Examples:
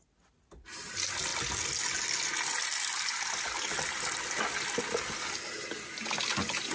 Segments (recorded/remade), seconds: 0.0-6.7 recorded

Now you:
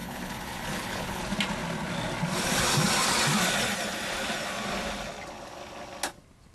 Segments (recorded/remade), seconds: 0.0-1.2 remade; 1.2-6.5 recorded

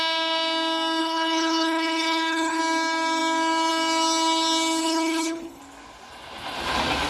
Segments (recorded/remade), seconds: 0.0-1.0 recorded; 1.0-2.6 remade; 2.6-4.8 recorded; 4.8-5.6 remade; 5.6-7.1 recorded